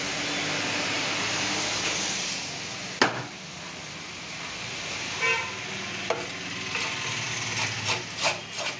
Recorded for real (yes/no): yes